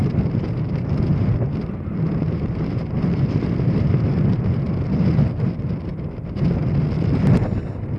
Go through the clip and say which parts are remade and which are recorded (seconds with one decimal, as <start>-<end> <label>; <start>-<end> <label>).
0.0-4.7 remade; 4.7-8.0 recorded